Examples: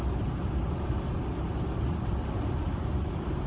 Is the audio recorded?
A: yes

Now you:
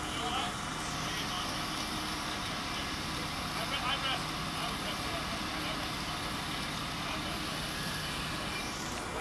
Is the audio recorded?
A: yes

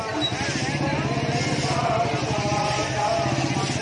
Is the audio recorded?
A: yes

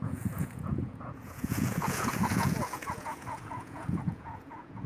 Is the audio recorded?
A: no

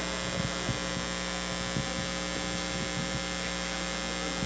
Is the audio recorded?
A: yes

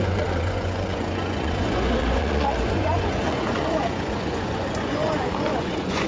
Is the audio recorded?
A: no